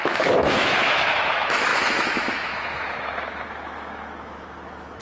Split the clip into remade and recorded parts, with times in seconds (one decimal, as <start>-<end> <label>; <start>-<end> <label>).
0.0-5.0 remade